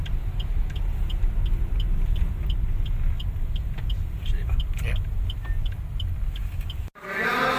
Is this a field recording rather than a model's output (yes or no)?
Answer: yes